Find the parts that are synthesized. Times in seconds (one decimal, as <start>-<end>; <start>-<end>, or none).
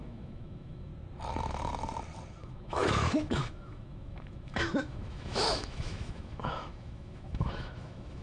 0.0-0.9; 2.4-8.2